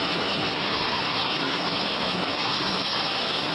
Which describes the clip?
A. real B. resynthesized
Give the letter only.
B